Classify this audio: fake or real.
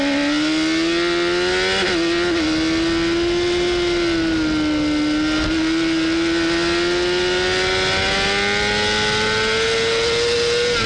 real